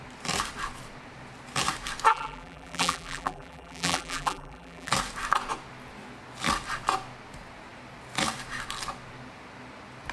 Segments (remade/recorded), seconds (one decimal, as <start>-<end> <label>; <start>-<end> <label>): 0.0-2.1 recorded; 2.1-4.9 remade; 4.9-10.1 recorded